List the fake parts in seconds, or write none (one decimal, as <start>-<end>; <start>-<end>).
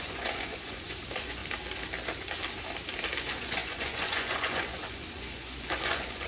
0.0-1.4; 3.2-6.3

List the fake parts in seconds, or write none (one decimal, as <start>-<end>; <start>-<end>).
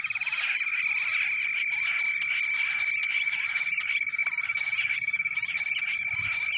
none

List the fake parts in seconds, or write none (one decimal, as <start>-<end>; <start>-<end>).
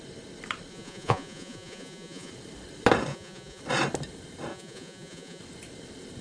0.7-2.3; 3.1-3.6; 4.5-5.4